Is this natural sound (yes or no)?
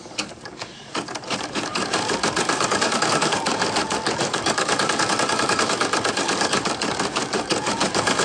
no